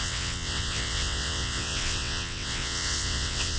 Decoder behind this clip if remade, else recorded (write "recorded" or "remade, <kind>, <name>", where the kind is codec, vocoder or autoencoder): remade, vocoder, WaveNeXt